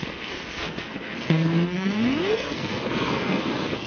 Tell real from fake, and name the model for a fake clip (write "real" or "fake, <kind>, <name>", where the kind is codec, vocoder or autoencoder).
fake, codec, SNAC